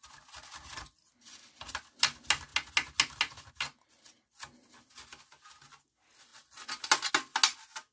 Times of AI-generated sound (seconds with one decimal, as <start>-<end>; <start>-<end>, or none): none